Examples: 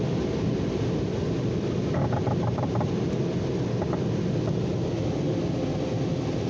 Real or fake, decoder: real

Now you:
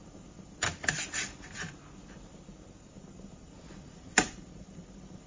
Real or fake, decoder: fake, vocoder, BigVGAN v2